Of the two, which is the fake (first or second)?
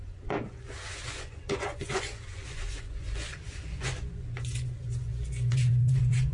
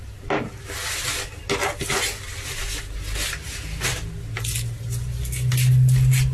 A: first